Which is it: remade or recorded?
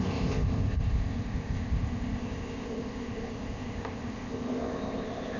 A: remade